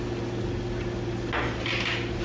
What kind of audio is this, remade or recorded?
recorded